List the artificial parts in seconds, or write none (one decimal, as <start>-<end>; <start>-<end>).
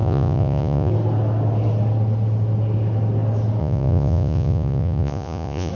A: 0.0-0.9; 3.6-5.7